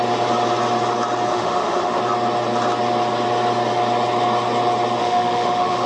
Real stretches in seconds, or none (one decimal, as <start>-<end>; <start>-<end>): 0.0-1.3; 2.0-5.0